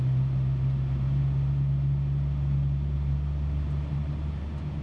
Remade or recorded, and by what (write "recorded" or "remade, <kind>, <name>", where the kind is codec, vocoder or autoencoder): recorded